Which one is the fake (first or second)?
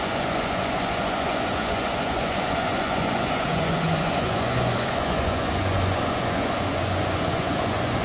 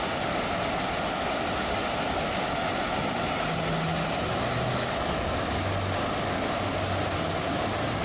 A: first